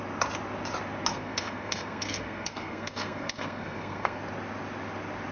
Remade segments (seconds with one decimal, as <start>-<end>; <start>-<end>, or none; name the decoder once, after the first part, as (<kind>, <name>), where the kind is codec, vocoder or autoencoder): 1.1-4.2 (codec, SNAC)